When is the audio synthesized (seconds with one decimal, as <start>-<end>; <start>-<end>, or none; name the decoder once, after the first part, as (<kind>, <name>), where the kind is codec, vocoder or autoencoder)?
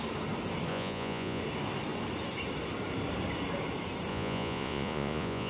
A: 0.7-1.4 (vocoder, Vocos); 4.1-5.5